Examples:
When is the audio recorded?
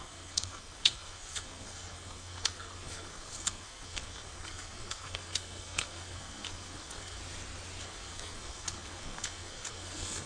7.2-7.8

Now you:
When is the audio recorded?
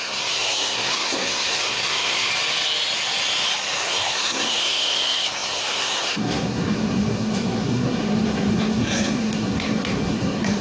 2.3-3.8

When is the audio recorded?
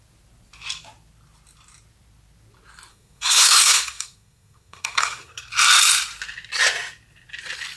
0.0-2.9; 5.5-7.8